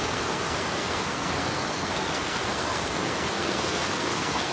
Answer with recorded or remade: remade